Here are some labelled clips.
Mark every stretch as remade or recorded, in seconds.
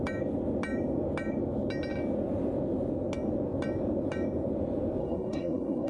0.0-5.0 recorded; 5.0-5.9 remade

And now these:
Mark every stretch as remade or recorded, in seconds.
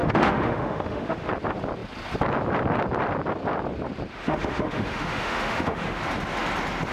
0.0-1.3 remade; 1.3-4.1 recorded; 4.1-6.0 remade; 6.0-6.9 recorded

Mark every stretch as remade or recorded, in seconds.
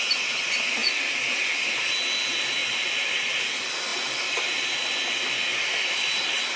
0.0-5.5 recorded; 5.5-6.6 remade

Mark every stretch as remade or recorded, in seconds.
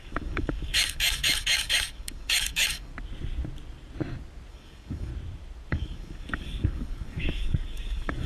0.0-2.9 remade; 2.9-4.5 recorded; 4.5-5.1 remade; 5.1-5.7 recorded; 5.7-8.3 remade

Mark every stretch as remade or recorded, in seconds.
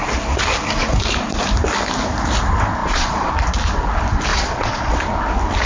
0.0-2.8 recorded; 2.8-3.3 remade; 3.3-4.3 recorded; 4.3-5.0 remade; 5.0-5.7 recorded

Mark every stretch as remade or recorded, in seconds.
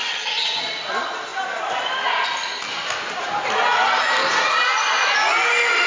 0.0-0.6 remade; 0.6-5.9 recorded